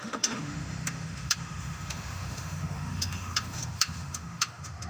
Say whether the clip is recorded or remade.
remade